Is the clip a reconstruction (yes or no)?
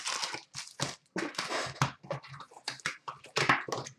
no